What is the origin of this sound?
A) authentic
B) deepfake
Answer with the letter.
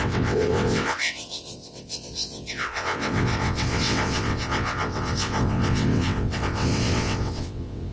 B